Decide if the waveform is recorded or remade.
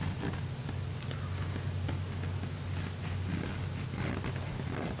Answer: recorded